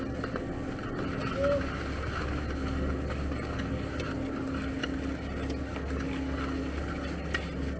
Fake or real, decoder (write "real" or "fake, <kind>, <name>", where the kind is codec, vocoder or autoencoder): real